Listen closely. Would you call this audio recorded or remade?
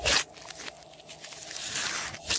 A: recorded